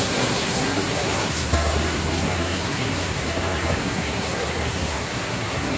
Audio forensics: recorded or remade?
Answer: remade